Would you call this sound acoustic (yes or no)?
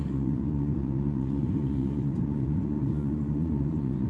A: no